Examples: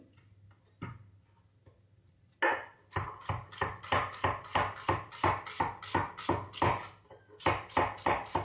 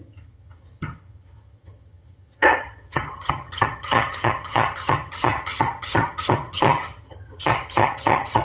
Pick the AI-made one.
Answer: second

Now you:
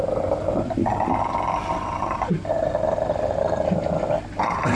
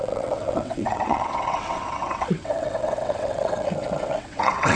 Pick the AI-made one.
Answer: second